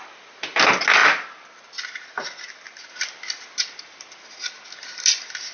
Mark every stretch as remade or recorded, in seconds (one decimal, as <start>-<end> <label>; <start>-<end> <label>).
0.0-5.5 recorded